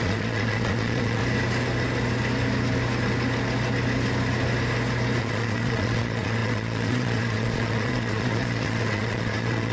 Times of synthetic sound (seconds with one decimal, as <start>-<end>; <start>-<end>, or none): 0.0-1.2; 5.2-9.7